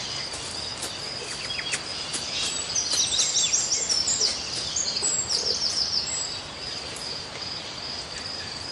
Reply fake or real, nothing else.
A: real